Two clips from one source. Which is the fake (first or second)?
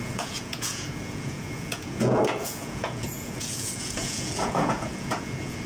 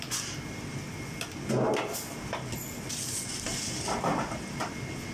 first